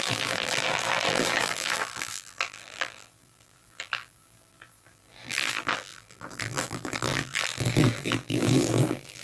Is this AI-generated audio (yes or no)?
yes